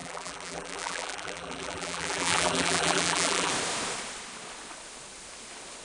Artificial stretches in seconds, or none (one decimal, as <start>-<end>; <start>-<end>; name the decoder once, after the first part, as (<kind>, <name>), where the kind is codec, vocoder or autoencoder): 0.0-3.5 (vocoder, BigVGAN v2)